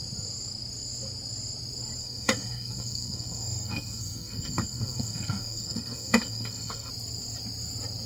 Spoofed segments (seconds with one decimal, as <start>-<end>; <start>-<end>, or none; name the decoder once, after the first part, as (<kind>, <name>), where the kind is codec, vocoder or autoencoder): 2.0-6.9 (codec, SNAC)